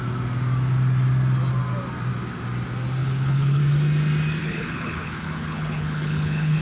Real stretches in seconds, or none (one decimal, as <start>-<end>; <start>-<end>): 0.0-3.0; 3.6-4.4